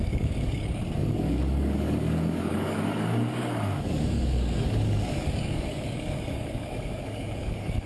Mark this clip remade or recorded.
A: remade